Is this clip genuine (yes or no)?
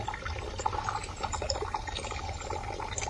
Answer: yes